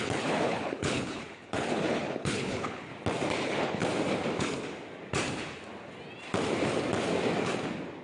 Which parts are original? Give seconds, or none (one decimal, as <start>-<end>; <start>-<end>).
2.9-3.4; 3.8-8.0